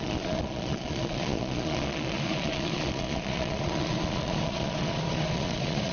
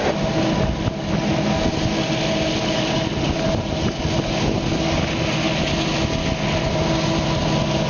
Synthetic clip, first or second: first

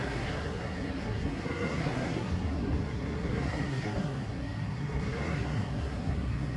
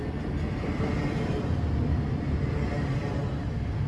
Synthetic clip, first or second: first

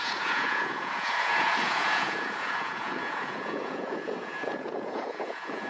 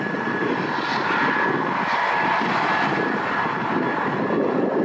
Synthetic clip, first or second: first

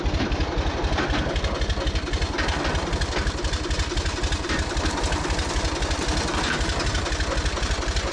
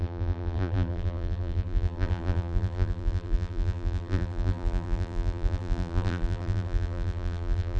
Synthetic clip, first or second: second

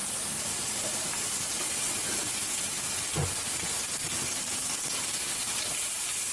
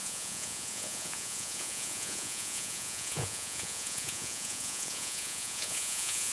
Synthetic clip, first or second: second